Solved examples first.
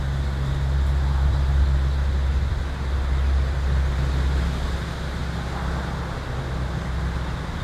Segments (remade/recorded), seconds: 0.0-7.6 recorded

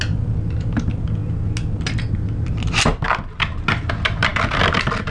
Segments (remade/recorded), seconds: 0.0-5.1 recorded